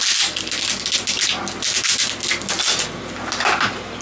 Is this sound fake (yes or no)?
no